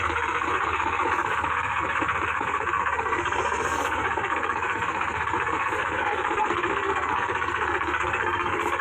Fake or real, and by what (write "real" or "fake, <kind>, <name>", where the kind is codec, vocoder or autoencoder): fake, codec, SNAC